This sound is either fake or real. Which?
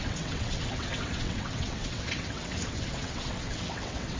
fake